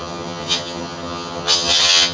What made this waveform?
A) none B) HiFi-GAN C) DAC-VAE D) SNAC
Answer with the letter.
B